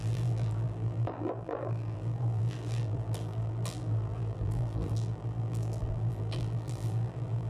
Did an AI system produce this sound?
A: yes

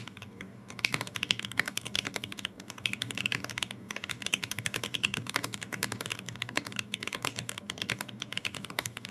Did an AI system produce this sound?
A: yes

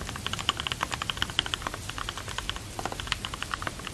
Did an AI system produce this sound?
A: no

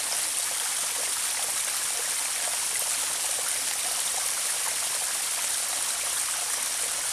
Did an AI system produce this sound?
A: no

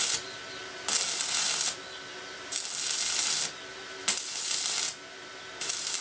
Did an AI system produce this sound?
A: no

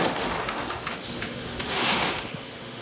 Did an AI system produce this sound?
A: yes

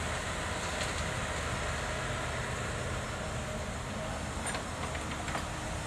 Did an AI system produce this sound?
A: no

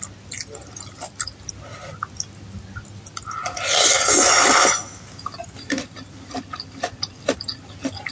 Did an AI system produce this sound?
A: no